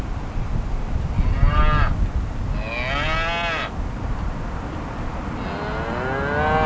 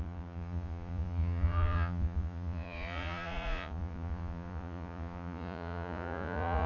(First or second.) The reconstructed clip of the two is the second